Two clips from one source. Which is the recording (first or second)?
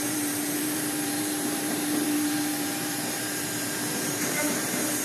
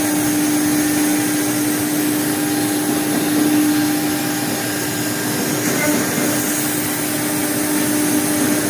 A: second